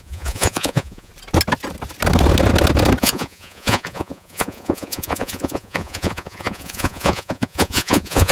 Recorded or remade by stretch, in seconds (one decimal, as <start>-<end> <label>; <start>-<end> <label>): 0.0-1.1 remade; 1.1-3.0 recorded; 3.0-8.3 remade